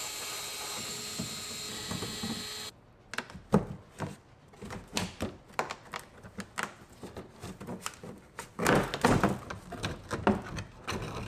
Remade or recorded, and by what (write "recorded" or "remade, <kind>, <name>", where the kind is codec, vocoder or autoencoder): recorded